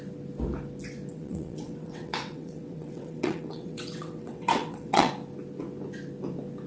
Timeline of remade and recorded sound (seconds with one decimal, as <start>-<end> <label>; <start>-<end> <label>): 0.0-1.1 recorded; 1.1-5.1 remade; 5.1-6.7 recorded